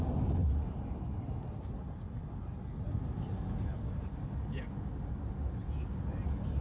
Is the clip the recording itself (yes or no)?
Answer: yes